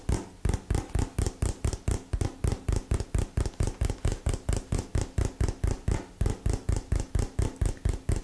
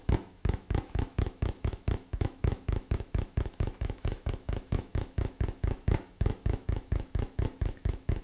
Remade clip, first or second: second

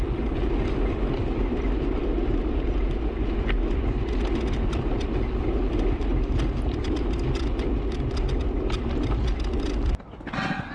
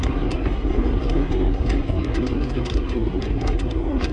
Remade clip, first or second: second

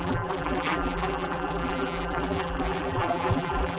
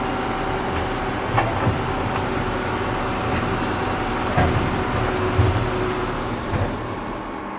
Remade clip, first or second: first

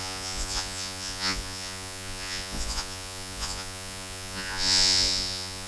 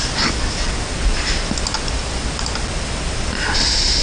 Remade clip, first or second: first